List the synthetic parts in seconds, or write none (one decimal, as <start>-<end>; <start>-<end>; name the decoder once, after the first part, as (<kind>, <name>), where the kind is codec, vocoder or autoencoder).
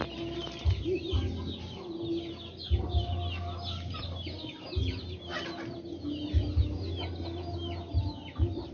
none